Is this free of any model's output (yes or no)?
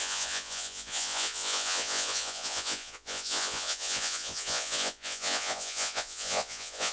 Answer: no